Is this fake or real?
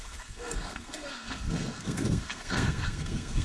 fake